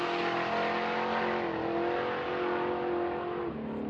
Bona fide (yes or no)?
yes